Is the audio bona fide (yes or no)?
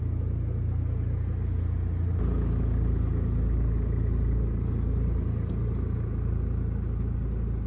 yes